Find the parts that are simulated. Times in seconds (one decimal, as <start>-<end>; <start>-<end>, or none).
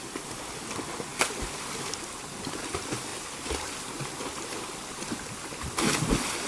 none